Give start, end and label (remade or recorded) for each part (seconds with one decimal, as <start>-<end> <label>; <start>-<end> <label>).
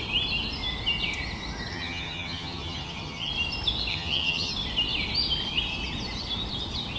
0.0-1.7 recorded; 1.7-3.3 remade; 3.3-3.9 recorded; 3.9-4.5 remade; 4.5-7.0 recorded